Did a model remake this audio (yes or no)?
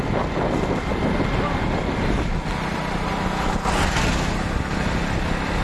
no